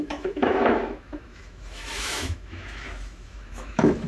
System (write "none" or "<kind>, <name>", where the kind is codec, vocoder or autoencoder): autoencoder, DAC-VAE